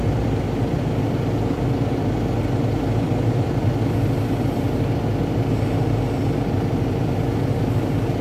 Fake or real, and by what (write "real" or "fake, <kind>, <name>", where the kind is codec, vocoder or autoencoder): real